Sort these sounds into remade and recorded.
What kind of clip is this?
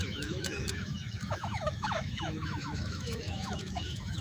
remade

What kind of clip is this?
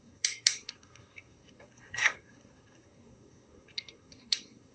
remade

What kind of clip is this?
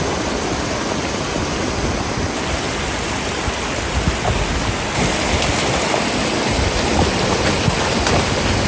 recorded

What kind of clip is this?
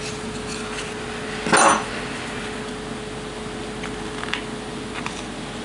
recorded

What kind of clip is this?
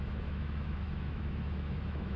remade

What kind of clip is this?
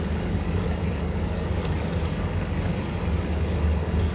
remade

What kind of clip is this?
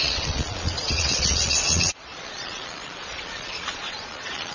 remade